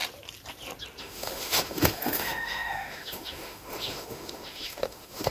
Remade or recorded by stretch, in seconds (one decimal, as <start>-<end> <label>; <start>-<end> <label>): 0.0-1.0 recorded; 1.0-5.3 remade